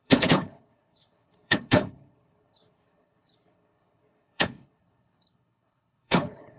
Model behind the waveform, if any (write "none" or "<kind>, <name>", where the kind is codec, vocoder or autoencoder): codec, HILCodec